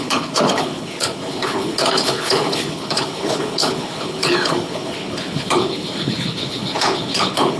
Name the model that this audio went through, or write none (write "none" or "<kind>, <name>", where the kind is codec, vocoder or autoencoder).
codec, HILCodec